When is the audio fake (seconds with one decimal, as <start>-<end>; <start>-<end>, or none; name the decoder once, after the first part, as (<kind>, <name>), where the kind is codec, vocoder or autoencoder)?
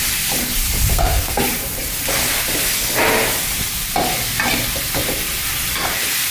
0.9-1.4 (codec, SNAC)